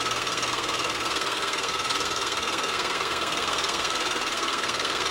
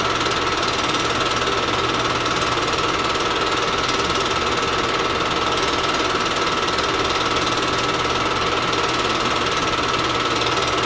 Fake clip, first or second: first